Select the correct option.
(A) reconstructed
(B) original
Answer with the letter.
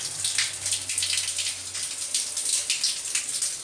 B